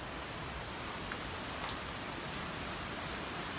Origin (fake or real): real